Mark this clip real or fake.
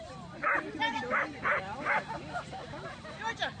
fake